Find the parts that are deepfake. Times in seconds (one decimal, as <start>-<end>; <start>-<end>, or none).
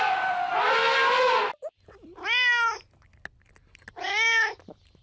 none